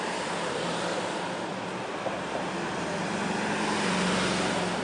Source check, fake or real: fake